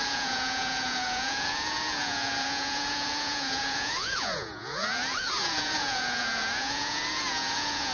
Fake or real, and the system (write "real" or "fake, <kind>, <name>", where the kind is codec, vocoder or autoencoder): fake, vocoder, Vocos